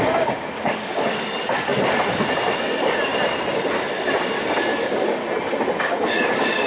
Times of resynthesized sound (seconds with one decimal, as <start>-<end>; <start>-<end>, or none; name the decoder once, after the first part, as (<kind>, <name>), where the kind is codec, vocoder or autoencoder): 0.0-1.7 (codec, DAC); 2.6-3.1; 4.8-5.2; 5.8-6.7